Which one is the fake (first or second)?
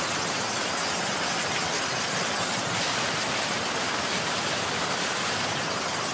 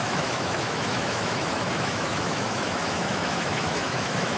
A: second